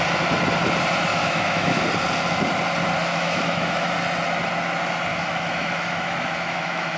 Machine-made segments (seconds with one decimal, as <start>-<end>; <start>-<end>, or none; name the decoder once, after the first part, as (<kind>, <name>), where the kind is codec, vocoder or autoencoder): 1.1-1.8 (autoencoder, DAC-VAE); 3.0-3.9; 5.1-7.0